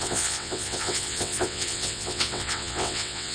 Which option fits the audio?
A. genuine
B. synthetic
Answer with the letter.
B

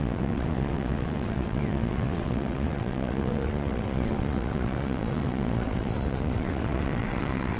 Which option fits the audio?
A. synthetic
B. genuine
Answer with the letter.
A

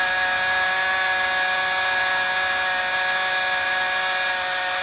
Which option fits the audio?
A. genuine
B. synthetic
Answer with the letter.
A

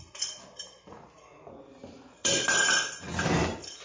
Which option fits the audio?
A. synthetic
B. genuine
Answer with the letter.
B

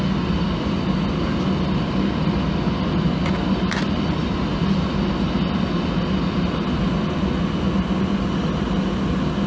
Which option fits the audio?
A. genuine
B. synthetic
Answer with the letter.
A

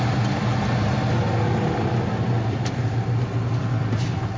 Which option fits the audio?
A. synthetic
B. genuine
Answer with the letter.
B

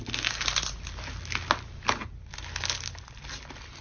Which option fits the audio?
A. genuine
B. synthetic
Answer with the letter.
A